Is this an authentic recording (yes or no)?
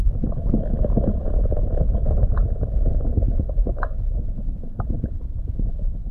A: yes